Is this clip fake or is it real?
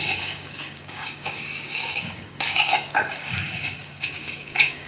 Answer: fake